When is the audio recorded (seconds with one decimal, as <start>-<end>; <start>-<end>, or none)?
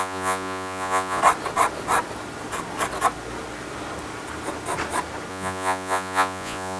1.2-5.3